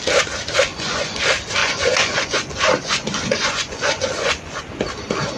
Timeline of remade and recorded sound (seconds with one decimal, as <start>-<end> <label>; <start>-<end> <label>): 0.0-0.7 recorded; 0.7-1.2 remade; 1.2-1.6 recorded; 1.6-4.6 remade; 4.6-5.4 recorded